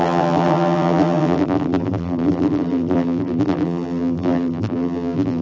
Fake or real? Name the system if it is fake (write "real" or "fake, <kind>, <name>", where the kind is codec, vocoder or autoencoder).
fake, vocoder, BigVGAN v2